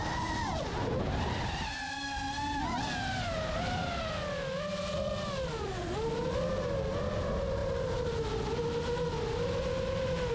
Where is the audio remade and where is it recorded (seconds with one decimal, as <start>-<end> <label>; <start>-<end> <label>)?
0.0-10.3 recorded